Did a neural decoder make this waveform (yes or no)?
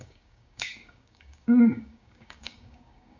yes